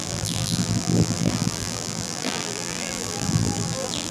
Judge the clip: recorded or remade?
remade